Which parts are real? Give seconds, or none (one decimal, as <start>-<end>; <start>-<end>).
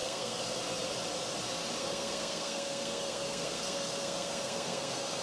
0.6-1.8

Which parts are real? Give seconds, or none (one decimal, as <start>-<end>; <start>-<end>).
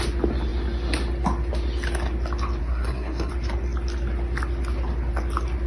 0.0-2.6; 3.3-5.7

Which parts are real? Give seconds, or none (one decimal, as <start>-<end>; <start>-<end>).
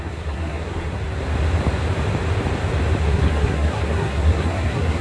1.0-3.0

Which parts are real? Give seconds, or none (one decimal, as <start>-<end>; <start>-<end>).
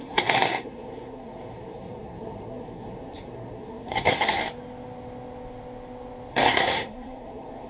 4.4-6.3